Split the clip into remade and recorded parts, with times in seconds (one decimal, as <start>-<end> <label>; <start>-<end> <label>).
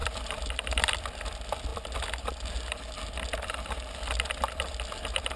0.0-0.9 remade; 0.9-1.7 recorded; 1.7-2.3 remade; 2.3-5.4 recorded